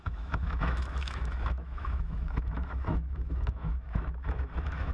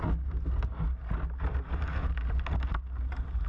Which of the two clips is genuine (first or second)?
second